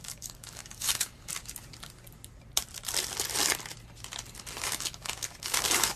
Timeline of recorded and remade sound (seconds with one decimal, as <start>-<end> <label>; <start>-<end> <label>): 0.0-1.3 remade; 1.3-4.6 recorded; 4.6-6.0 remade